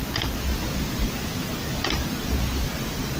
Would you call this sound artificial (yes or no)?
no